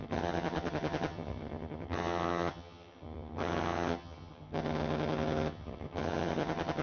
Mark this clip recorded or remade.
remade